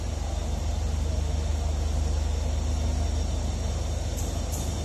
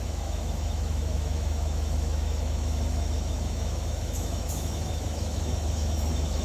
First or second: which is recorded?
first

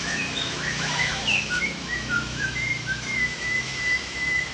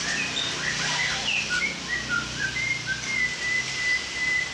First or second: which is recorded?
second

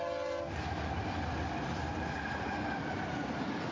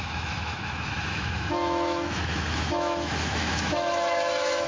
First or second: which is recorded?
first